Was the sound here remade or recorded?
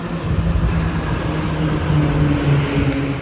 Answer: recorded